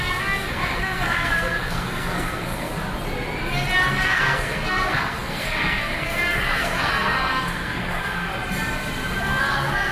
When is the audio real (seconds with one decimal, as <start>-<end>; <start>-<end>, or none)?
2.7-3.9; 8.3-9.2